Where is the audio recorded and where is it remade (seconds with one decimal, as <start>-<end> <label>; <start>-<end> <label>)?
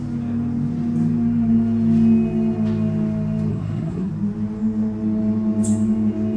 0.0-3.5 recorded; 3.5-4.1 remade; 4.1-6.4 recorded